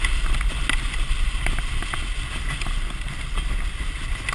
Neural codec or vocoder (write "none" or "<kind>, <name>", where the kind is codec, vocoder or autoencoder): none